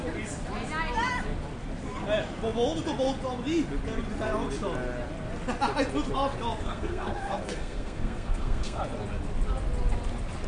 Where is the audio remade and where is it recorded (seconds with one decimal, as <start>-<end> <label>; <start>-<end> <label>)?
0.0-6.6 recorded; 6.6-8.8 remade; 8.8-10.5 recorded

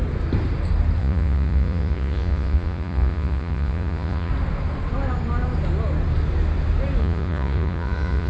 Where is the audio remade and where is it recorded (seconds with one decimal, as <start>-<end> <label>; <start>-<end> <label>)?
0.0-1.0 recorded; 1.0-4.3 remade; 4.3-7.0 recorded; 7.0-8.3 remade

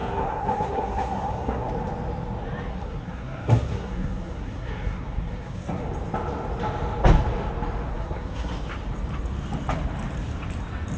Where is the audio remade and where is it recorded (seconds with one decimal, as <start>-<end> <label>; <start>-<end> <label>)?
0.0-1.7 remade; 1.7-2.7 recorded; 2.7-5.8 remade; 5.8-7.9 recorded; 7.9-8.5 remade; 8.5-11.0 recorded

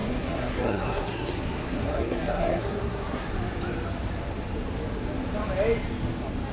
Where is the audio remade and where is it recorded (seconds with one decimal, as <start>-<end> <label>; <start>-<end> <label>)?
0.0-3.3 remade; 3.3-6.5 recorded

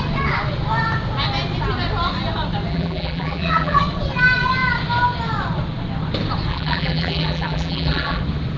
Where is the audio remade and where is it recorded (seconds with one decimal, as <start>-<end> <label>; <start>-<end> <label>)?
0.0-2.7 recorded; 2.7-3.8 remade; 3.8-6.5 recorded; 6.5-8.2 remade; 8.2-8.6 recorded

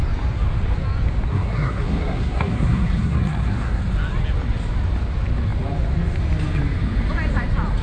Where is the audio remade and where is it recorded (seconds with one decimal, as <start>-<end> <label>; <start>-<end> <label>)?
0.0-1.3 recorded; 1.3-3.8 remade; 3.8-7.8 recorded